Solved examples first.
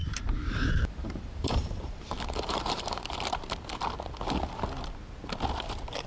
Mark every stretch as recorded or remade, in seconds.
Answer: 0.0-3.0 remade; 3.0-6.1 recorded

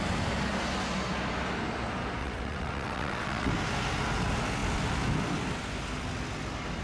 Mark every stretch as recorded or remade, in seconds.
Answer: 0.0-2.2 recorded; 2.2-3.5 remade; 3.5-6.8 recorded

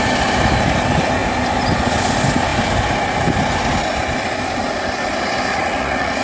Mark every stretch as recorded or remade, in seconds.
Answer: 0.0-5.5 recorded; 5.5-6.2 remade

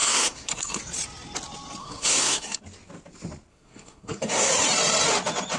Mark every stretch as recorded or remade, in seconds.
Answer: 0.0-0.8 remade; 0.8-1.8 recorded; 1.8-2.6 remade; 2.6-3.5 recorded; 3.5-4.5 remade; 4.5-5.6 recorded